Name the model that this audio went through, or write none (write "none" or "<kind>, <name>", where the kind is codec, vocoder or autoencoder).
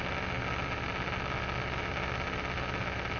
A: none